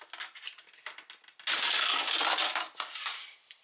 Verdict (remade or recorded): recorded